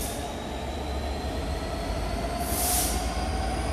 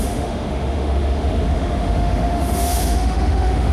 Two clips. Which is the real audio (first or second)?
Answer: first